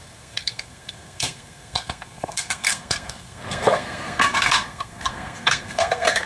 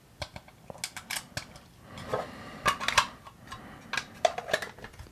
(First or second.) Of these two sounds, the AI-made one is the first